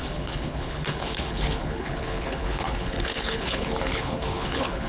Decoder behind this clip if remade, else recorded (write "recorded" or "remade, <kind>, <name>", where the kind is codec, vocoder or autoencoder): remade, codec, HILCodec